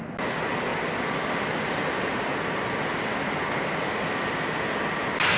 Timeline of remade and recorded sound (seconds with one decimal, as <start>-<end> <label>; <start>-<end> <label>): 0.0-5.4 recorded